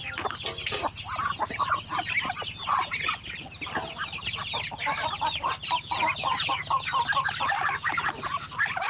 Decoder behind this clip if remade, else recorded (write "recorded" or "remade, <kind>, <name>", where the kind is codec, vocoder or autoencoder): recorded